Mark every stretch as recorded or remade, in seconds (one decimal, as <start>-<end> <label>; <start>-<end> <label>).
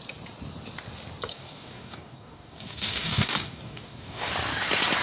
0.0-1.3 recorded; 1.3-4.3 remade; 4.3-5.0 recorded